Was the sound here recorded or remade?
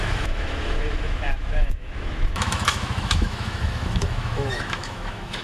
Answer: remade